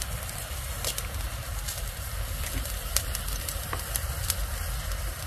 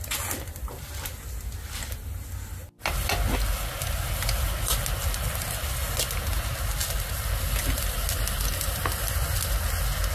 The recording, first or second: second